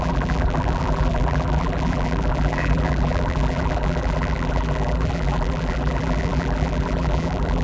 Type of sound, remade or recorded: remade